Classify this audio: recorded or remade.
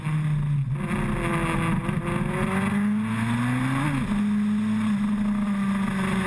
recorded